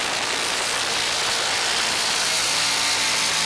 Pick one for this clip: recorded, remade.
recorded